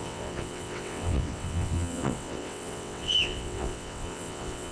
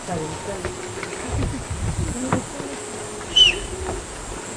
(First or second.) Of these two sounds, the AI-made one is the first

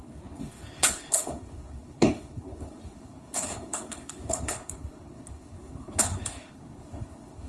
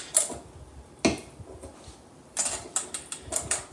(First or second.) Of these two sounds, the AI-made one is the first